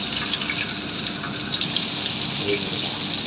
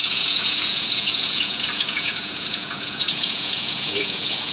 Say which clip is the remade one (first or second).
second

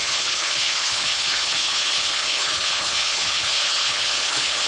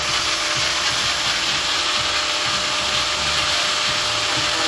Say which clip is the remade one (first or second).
first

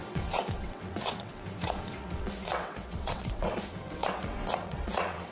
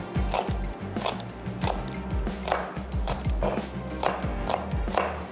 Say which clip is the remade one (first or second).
first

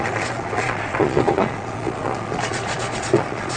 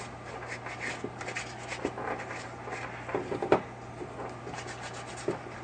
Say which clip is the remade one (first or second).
first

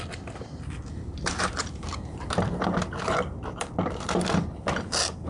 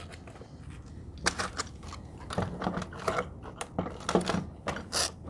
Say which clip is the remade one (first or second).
first